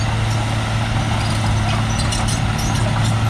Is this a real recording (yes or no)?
yes